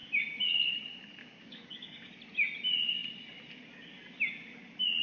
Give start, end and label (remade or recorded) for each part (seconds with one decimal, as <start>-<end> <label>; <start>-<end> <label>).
0.0-1.2 recorded; 1.2-2.1 remade; 2.1-5.0 recorded

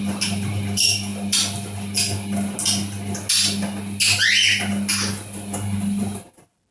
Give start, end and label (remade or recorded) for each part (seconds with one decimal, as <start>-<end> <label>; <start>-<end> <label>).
0.0-6.7 recorded

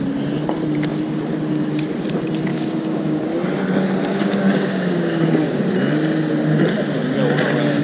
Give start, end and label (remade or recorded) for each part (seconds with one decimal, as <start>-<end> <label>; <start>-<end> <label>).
0.0-2.5 recorded; 2.5-3.2 remade; 3.2-4.1 recorded; 4.1-5.6 remade; 5.6-7.8 recorded

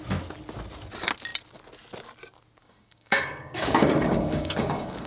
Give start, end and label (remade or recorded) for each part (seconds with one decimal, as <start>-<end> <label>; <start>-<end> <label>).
0.0-2.6 recorded; 2.6-5.1 remade

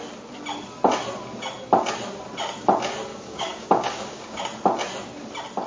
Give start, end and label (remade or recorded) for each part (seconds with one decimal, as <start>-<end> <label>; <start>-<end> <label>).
0.0-3.1 recorded; 3.1-4.4 remade; 4.4-5.7 recorded

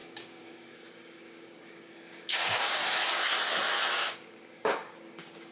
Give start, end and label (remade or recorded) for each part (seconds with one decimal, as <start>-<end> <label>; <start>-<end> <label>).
0.0-2.8 remade; 2.8-3.9 recorded; 3.9-5.5 remade

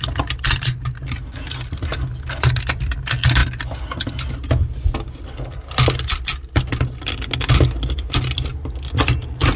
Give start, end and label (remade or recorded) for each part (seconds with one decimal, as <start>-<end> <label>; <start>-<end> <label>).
0.0-9.6 recorded